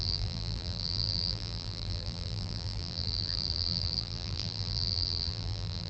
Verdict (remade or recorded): remade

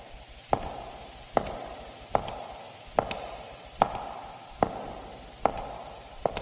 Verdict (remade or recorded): recorded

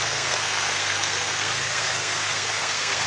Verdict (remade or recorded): remade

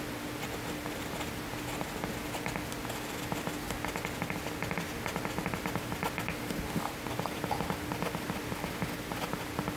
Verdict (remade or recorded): recorded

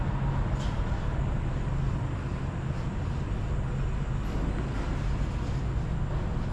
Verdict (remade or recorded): recorded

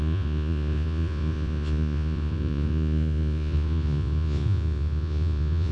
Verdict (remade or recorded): remade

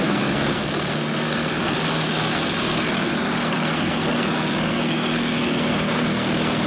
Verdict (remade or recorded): remade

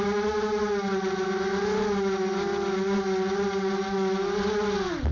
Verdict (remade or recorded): recorded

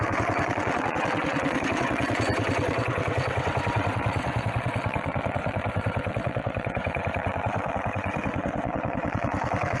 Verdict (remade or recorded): remade